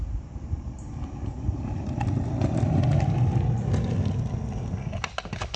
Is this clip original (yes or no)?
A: yes